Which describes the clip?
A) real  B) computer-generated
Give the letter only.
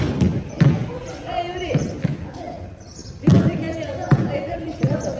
A